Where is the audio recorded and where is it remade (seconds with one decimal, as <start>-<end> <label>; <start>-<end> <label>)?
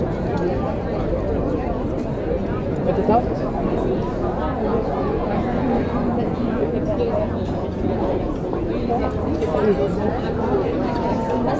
0.0-2.4 recorded; 2.4-3.7 remade; 3.7-4.7 recorded; 4.7-8.3 remade; 8.3-11.6 recorded